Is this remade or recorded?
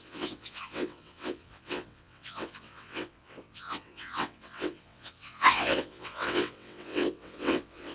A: remade